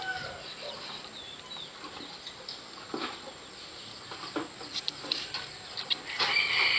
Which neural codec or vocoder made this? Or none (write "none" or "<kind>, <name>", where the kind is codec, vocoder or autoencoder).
none